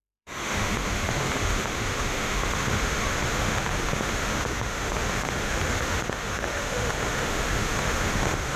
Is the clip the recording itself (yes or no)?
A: no